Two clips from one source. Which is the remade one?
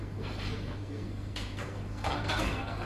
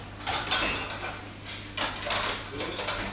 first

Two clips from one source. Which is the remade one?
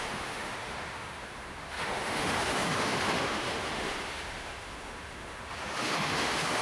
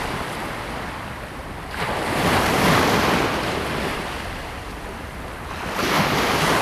first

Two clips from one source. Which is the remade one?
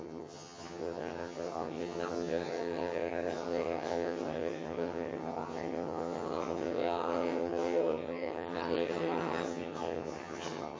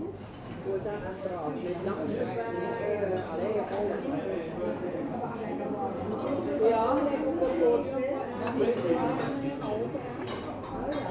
first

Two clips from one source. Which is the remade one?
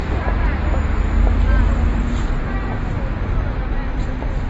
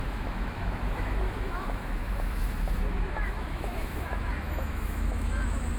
second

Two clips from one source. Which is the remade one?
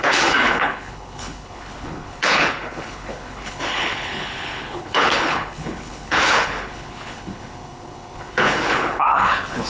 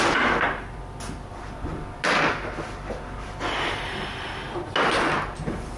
first